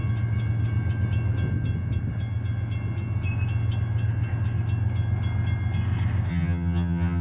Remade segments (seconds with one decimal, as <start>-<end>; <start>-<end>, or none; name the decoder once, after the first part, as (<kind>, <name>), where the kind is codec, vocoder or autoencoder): 6.3-7.2 (vocoder, HiFi-GAN)